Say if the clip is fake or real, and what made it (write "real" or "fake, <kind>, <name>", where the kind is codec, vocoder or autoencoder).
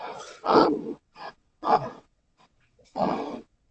fake, vocoder, WaveNeXt